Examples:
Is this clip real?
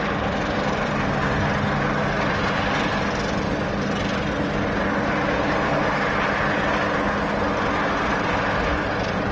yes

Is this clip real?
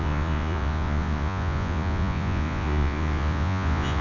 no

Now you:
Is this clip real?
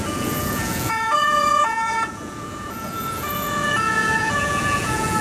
no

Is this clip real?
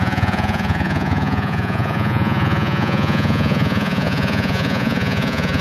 no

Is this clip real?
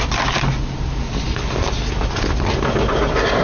yes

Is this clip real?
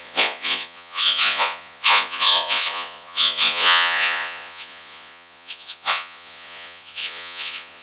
no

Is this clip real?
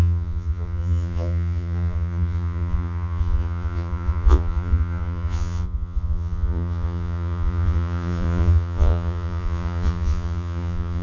no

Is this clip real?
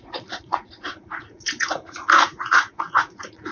no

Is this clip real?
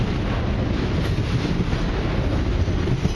yes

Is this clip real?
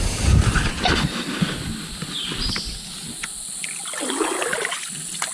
yes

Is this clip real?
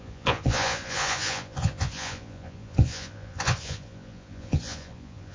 no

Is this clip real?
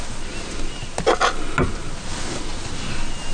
yes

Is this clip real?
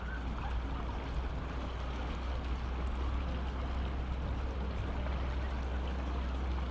yes